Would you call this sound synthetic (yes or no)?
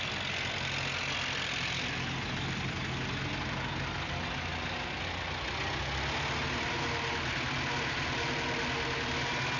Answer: no